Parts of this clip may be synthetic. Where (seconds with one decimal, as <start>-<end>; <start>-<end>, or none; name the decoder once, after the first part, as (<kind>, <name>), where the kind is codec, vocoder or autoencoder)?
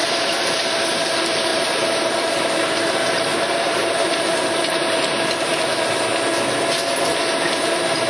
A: 0.0-0.8 (vocoder, BigVGAN v2); 1.5-6.0; 7.1-8.1